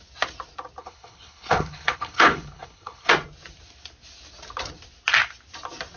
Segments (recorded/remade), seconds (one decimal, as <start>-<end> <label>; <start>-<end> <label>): 0.0-0.8 recorded; 0.8-3.1 remade; 3.1-6.0 recorded